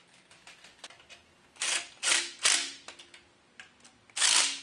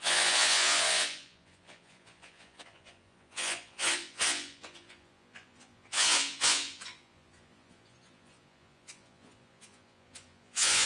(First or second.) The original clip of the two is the first